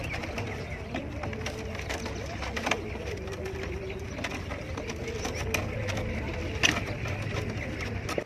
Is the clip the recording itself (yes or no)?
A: yes